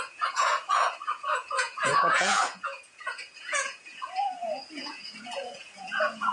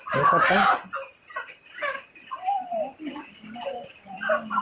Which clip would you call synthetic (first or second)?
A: first